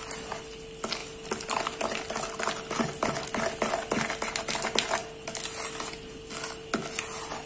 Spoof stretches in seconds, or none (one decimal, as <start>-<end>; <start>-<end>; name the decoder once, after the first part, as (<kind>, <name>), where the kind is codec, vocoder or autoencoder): none